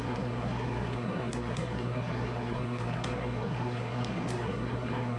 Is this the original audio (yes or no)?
no